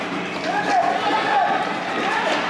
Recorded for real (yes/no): yes